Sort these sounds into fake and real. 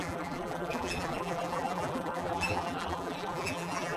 fake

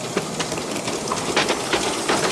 real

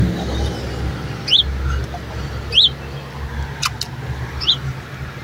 real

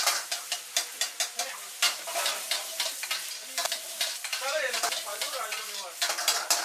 fake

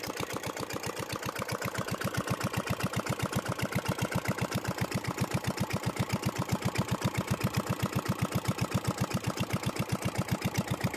real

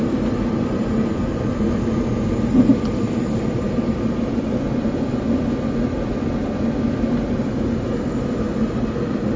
real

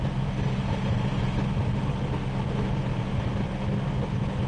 real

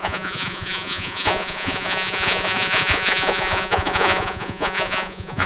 fake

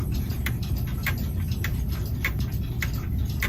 real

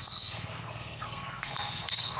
fake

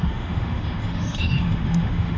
fake